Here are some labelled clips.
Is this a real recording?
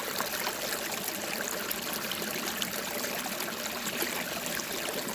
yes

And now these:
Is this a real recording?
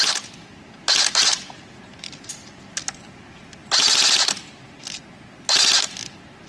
yes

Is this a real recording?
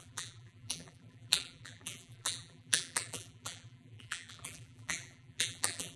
no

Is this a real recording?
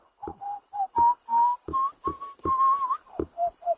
no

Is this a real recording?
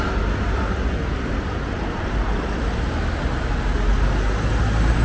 yes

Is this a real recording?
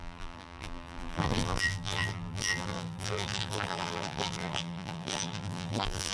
no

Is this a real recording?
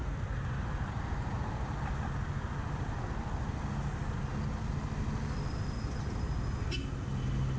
yes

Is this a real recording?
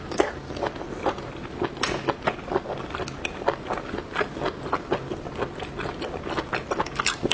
yes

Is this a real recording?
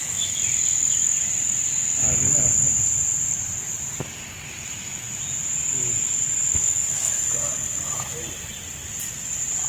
yes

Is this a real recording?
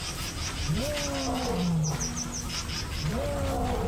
yes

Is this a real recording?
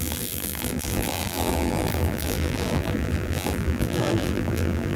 no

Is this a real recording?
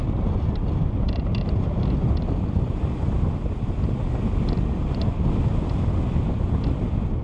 yes